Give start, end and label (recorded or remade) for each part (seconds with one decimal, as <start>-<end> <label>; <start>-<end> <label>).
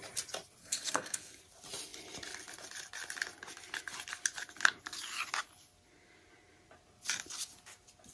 0.0-0.6 recorded; 0.6-1.4 remade; 1.4-8.1 recorded